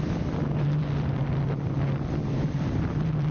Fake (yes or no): yes